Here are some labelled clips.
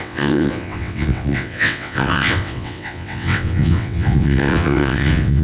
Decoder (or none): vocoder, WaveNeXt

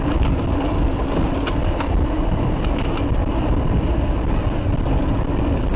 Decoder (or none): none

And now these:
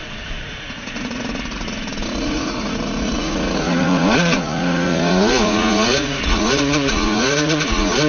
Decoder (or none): vocoder, Vocos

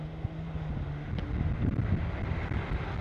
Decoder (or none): none